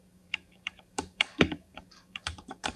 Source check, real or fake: fake